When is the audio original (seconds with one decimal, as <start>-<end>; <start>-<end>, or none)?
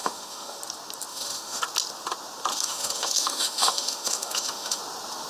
0.6-1.1; 1.6-2.5; 4.8-5.3